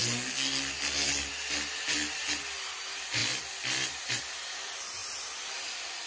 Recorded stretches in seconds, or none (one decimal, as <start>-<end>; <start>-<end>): 0.0-6.1